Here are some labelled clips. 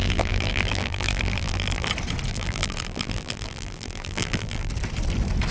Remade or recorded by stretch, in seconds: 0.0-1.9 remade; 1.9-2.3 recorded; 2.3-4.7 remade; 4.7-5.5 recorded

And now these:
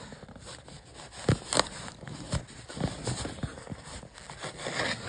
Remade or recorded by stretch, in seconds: 0.0-5.1 recorded

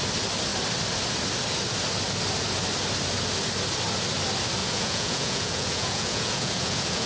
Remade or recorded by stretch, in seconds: 0.0-4.6 recorded; 4.6-7.1 remade

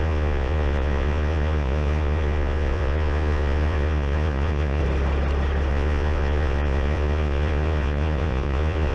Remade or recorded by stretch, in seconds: 0.0-4.8 remade; 4.8-5.7 recorded; 5.7-8.9 remade

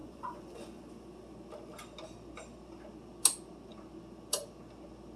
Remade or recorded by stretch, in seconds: 0.0-0.8 remade; 0.8-5.2 recorded

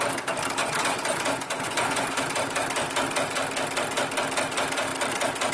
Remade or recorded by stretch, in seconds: 0.0-0.6 recorded; 0.6-2.2 remade; 2.2-5.5 recorded